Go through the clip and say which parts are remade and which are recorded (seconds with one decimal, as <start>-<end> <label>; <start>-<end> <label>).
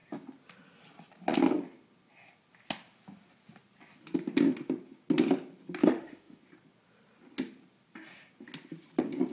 0.0-5.8 recorded; 5.8-6.4 remade; 6.4-9.3 recorded